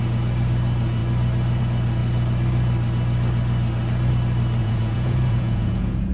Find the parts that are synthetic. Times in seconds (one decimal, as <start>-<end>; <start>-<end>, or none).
4.6-6.1